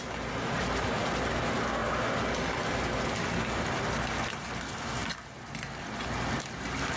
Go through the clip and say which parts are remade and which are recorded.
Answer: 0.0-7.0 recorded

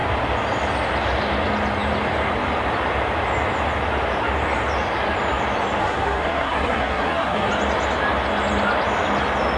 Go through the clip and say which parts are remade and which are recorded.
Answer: 0.0-5.8 recorded; 5.8-7.5 remade; 7.5-9.6 recorded

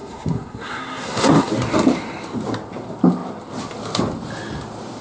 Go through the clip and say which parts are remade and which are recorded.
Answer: 0.0-1.5 remade; 1.5-5.0 recorded

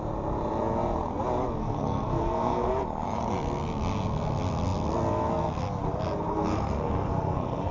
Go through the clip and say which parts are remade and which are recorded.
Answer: 0.0-1.6 recorded; 1.6-3.2 remade; 3.2-6.3 recorded; 6.3-7.7 remade

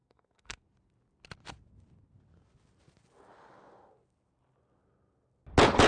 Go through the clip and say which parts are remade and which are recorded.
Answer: 0.0-0.6 remade; 0.6-5.9 recorded

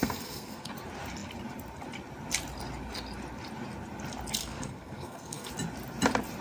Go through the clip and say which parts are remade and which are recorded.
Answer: 0.0-0.7 remade; 0.7-4.4 recorded; 4.4-5.5 remade; 5.5-6.4 recorded

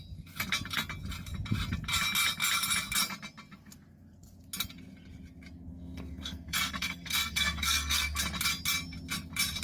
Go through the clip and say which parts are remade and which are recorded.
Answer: 0.0-5.7 recorded; 5.7-8.2 remade; 8.2-9.6 recorded